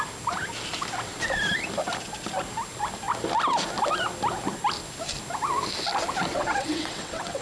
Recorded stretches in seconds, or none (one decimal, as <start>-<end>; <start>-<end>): 0.0-6.3